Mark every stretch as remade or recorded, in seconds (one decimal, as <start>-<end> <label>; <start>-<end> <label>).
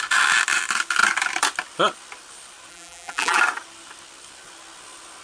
0.0-2.7 recorded; 2.7-3.4 remade; 3.4-5.2 recorded